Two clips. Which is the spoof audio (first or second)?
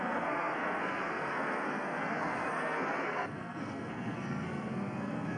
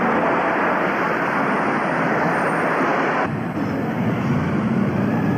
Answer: first